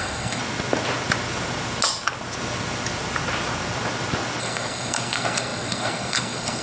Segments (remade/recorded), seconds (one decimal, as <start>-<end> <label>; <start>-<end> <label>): 0.0-0.4 remade; 0.4-4.4 recorded; 4.4-6.6 remade